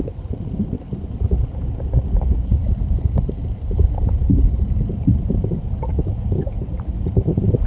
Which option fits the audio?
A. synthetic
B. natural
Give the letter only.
B